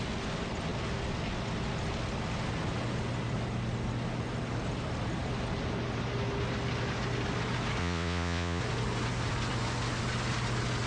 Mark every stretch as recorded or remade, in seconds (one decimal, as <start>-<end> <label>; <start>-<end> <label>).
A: 0.0-7.8 recorded; 7.8-8.6 remade; 8.6-10.9 recorded